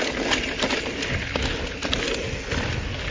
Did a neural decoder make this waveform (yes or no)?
no